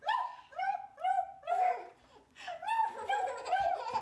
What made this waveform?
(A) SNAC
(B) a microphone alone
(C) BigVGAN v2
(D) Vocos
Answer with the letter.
D